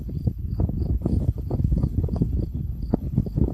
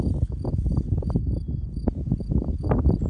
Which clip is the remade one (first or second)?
first